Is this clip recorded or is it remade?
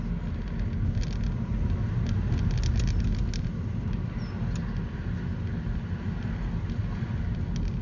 recorded